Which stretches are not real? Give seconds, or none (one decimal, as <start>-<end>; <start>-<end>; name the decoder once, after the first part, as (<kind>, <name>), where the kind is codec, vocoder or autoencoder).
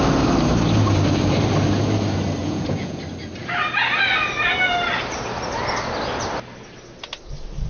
2.4-3.0 (vocoder, Vocos)